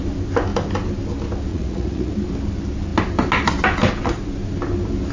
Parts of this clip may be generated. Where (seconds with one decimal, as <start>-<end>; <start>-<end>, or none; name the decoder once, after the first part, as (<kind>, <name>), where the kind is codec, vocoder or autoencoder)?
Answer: 1.5-2.1 (vocoder, Vocos)